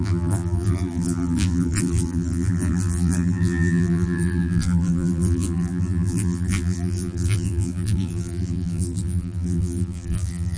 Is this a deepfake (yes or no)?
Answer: yes